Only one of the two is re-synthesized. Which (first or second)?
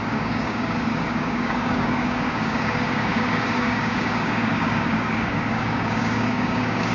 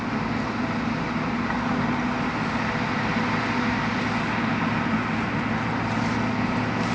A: first